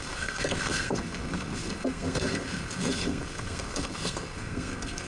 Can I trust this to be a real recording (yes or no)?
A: no